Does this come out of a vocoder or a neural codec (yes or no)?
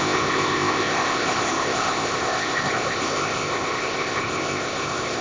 yes